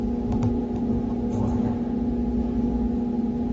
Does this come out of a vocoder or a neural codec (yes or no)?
no